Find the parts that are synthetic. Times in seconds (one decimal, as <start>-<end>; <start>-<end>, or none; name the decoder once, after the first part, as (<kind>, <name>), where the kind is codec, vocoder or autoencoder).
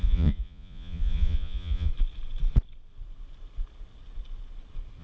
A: 0.0-1.9 (vocoder, Vocos)